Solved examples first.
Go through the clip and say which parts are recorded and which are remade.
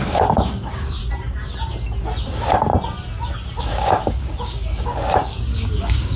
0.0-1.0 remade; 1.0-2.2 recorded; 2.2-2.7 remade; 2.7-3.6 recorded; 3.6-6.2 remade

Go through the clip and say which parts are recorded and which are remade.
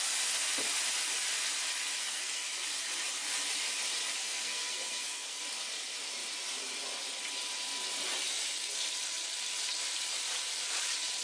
0.0-2.0 recorded; 2.0-2.6 remade; 2.6-4.2 recorded; 4.2-5.4 remade; 5.4-11.2 recorded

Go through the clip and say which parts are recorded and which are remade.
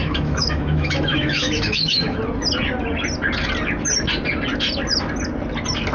0.0-2.2 remade; 2.2-5.9 recorded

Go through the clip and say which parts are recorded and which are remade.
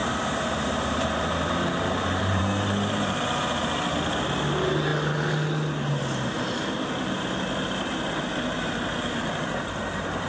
0.0-2.4 remade; 2.4-10.3 recorded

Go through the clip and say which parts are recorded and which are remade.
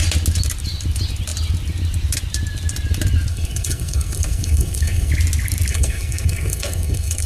0.0-3.3 recorded; 3.3-5.1 remade; 5.1-5.7 recorded; 5.7-7.3 remade